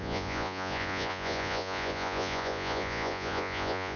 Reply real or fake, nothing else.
fake